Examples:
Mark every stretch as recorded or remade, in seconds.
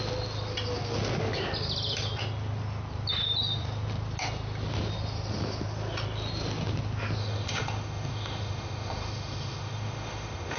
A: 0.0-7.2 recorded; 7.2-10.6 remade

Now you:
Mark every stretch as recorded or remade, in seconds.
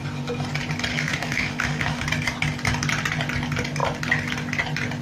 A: 0.0-0.9 recorded; 0.9-2.0 remade; 2.0-5.0 recorded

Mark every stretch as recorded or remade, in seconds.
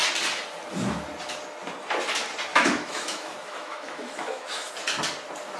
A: 0.0-2.5 recorded; 2.5-4.7 remade; 4.7-5.6 recorded